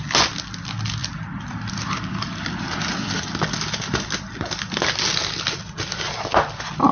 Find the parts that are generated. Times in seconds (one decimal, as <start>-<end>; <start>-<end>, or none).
1.0-3.3